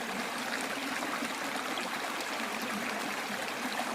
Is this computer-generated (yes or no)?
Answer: no